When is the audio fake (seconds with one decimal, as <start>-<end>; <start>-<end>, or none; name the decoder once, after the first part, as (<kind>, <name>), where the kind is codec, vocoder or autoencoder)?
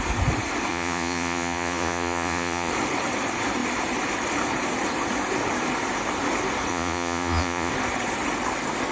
0.7-2.7 (vocoder, Vocos); 6.7-7.7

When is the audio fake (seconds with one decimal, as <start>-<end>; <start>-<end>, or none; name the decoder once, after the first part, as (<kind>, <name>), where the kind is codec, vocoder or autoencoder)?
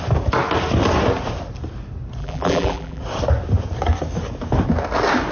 2.2-3.0 (vocoder, BigVGAN v2)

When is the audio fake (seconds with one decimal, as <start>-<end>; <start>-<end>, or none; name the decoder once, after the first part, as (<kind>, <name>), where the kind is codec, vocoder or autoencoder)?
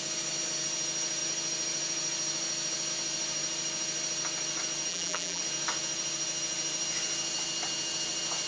4.9-5.4 (vocoder, BigVGAN v2)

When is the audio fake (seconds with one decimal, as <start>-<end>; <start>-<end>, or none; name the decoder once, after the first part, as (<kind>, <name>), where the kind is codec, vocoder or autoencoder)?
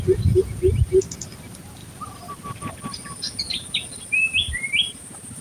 none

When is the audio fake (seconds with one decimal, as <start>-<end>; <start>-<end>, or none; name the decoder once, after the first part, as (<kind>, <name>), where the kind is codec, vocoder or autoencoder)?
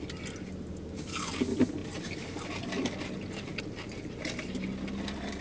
none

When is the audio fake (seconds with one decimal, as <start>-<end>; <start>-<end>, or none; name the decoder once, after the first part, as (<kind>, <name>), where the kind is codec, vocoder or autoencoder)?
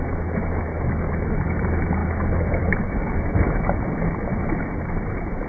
0.0-5.5 (autoencoder, DAC-VAE)